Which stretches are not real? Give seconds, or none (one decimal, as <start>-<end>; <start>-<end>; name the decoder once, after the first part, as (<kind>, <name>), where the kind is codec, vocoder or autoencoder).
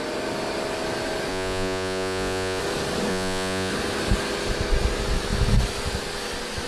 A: 1.3-2.6 (vocoder, Vocos); 3.1-3.7